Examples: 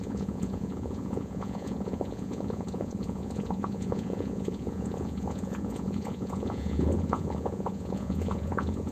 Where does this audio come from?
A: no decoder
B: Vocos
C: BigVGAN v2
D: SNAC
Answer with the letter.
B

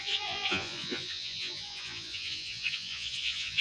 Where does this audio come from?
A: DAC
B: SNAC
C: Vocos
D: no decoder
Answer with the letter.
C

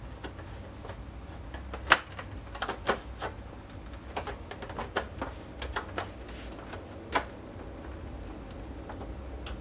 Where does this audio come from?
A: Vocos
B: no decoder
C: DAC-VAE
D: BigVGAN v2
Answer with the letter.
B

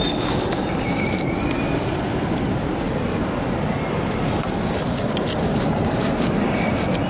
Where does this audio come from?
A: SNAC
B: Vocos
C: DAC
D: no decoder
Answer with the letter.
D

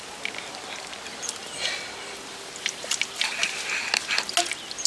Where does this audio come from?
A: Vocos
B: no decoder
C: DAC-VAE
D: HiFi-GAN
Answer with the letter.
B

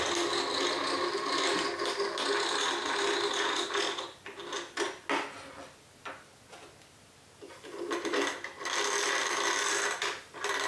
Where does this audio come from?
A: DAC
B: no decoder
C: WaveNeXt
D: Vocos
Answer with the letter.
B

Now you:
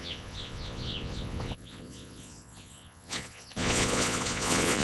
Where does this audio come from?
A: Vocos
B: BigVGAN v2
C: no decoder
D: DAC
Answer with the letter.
A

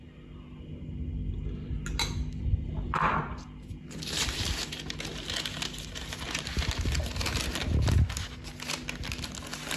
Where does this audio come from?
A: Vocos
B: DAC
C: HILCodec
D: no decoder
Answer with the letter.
D